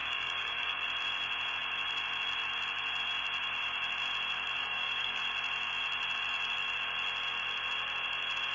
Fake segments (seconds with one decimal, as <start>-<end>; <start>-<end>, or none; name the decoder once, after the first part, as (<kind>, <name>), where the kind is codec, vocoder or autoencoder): 0.0-0.8 (codec, DAC); 4.6-5.2